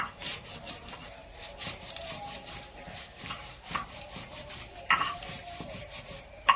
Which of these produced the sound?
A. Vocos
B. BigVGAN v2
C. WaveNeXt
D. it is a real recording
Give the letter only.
B